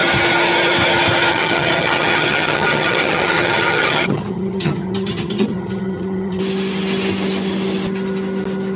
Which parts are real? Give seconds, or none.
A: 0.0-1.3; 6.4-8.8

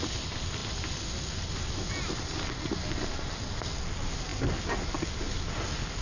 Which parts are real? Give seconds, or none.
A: 0.0-6.0

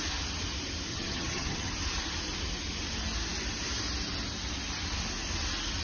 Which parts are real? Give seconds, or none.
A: 0.0-0.9; 1.7-5.8

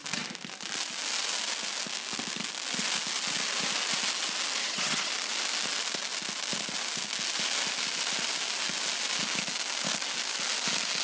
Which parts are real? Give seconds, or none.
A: 0.0-4.6; 5.1-11.0

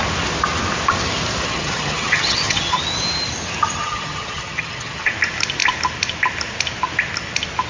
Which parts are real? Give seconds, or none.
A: 0.0-1.4; 2.8-3.8; 5.1-7.7